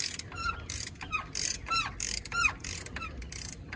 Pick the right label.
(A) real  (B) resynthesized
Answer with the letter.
A